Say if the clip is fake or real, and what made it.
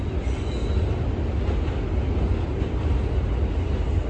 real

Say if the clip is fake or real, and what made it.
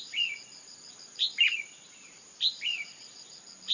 fake, vocoder, BigVGAN v2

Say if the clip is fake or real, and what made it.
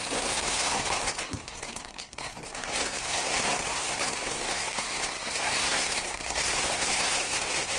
fake, codec, SNAC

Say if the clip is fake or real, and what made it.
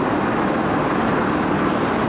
real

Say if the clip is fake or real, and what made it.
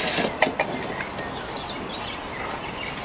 real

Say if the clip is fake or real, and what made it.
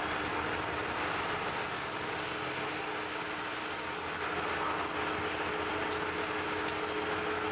real